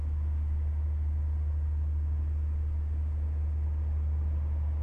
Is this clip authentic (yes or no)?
yes